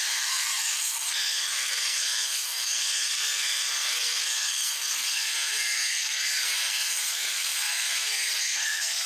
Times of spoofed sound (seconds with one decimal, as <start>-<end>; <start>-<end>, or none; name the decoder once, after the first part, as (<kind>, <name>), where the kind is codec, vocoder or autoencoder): 0.0-9.1 (codec, SNAC)